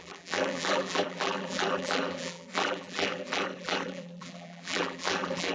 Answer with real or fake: fake